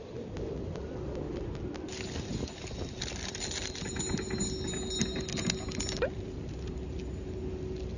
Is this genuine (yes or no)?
yes